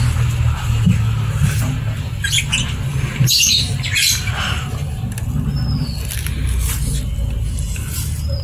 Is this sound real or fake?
real